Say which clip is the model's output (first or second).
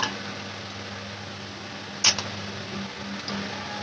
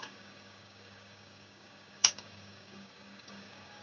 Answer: second